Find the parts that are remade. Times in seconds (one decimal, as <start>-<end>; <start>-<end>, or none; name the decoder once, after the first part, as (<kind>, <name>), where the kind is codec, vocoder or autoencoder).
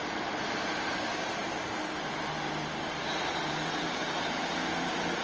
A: none